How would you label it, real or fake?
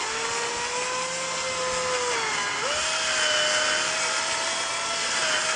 real